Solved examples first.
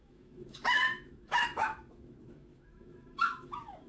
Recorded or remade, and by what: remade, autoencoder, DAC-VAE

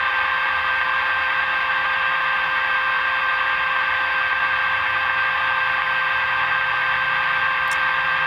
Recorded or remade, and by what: recorded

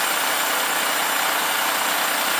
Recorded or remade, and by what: recorded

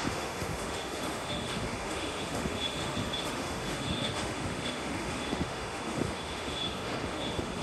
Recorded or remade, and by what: remade, autoencoder, DAC-VAE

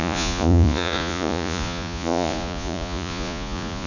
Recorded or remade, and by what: remade, vocoder, Vocos